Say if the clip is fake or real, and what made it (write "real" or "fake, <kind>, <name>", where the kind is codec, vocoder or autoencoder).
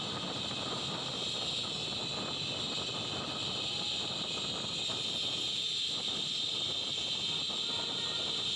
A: real